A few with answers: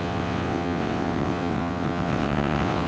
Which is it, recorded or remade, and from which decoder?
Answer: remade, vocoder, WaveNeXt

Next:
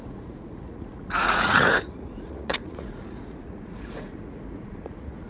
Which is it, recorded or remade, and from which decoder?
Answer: remade, vocoder, Vocos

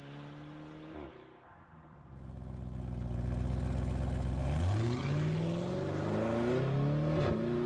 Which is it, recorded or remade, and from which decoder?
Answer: recorded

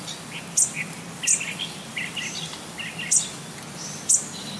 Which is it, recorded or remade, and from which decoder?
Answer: recorded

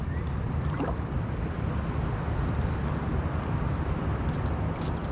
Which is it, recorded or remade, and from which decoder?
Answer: recorded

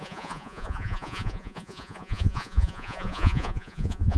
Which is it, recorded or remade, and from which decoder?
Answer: remade, vocoder, Vocos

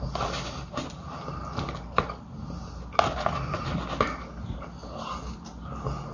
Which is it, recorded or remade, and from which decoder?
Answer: recorded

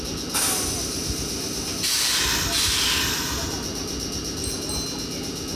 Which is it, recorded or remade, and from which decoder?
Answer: recorded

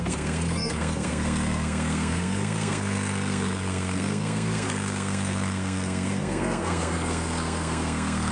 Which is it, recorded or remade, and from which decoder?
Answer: remade, codec, SNAC